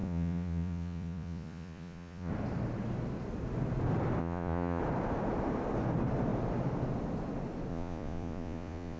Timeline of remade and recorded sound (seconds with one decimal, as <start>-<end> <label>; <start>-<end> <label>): 0.0-2.3 remade; 2.3-4.2 recorded; 4.2-4.8 remade; 4.8-7.7 recorded; 7.7-9.0 remade